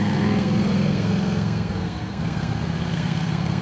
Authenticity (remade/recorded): remade